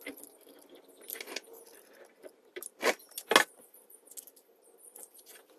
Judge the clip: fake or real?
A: real